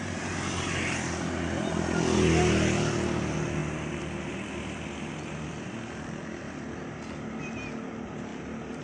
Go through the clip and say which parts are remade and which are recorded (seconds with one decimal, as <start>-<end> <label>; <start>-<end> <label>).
0.0-8.8 recorded